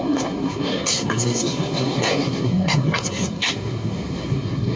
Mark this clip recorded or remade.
remade